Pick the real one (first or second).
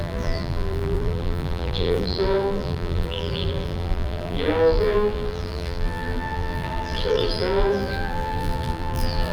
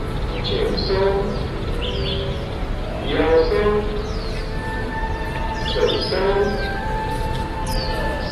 second